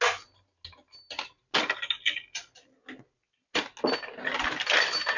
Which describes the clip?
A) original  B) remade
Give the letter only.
A